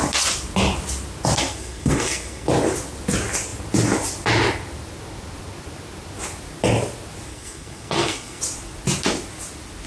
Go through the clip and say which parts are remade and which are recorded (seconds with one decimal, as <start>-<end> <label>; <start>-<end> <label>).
0.0-1.4 recorded; 1.4-2.5 remade; 2.5-7.3 recorded; 7.3-8.4 remade; 8.4-9.9 recorded